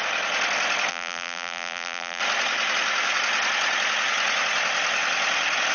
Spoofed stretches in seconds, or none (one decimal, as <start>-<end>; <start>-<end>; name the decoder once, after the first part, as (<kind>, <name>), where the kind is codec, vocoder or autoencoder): 0.9-2.2 (vocoder, BigVGAN v2)